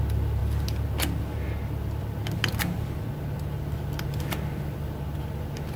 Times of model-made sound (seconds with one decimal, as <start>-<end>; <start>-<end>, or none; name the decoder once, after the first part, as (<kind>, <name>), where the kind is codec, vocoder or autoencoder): none